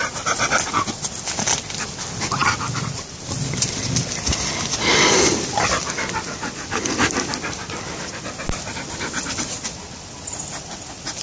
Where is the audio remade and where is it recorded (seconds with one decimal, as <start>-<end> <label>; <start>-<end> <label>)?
0.0-11.2 recorded

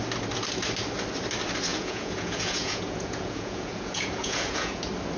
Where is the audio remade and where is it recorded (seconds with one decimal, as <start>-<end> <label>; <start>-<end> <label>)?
0.0-1.7 recorded; 1.7-4.8 remade; 4.8-5.2 recorded